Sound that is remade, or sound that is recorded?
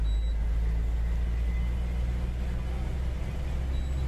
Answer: recorded